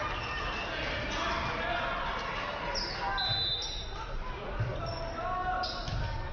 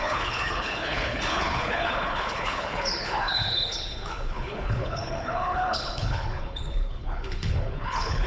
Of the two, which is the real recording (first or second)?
first